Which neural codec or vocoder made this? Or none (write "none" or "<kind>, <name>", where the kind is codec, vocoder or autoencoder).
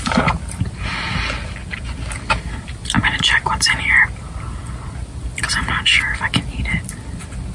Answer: none